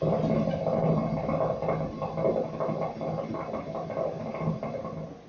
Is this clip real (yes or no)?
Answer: yes